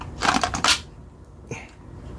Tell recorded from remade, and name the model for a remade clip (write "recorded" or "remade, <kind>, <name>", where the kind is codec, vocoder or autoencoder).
recorded